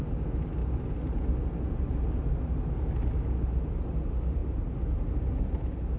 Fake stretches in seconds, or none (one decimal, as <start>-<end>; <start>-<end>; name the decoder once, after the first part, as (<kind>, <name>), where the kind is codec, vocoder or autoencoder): none